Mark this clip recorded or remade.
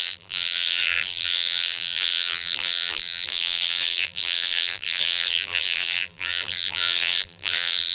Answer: remade